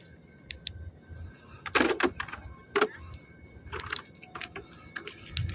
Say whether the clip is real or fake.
real